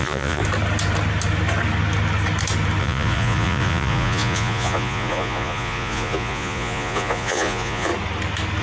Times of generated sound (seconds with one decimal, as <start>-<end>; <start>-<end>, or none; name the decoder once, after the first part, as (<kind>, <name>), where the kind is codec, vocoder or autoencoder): 0.0-0.4 (vocoder, Vocos); 2.8-7.9